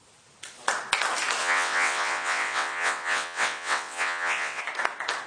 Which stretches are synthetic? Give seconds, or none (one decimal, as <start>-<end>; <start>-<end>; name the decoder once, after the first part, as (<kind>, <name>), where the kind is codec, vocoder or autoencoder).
1.4-4.6 (vocoder, WaveNeXt)